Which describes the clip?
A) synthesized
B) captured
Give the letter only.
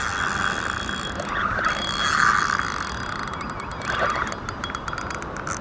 B